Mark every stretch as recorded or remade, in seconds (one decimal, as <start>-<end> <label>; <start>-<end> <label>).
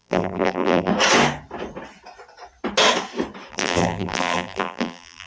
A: 0.0-0.9 remade; 0.9-3.5 recorded; 3.5-5.3 remade